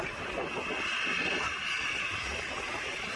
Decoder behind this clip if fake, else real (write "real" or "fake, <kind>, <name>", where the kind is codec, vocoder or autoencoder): real